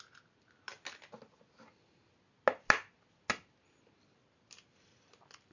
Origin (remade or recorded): recorded